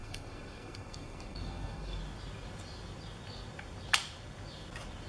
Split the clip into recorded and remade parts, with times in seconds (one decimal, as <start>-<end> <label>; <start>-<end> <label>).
0.0-2.0 remade; 2.0-5.1 recorded